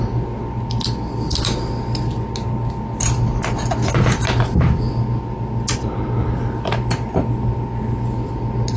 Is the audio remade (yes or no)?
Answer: no